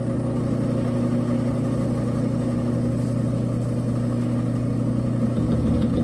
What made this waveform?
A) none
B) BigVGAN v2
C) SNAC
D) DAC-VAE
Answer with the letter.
A